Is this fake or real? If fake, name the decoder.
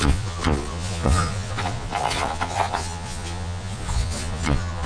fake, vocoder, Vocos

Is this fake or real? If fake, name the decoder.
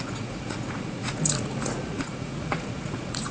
fake, vocoder, Vocos